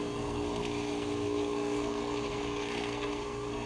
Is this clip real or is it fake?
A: fake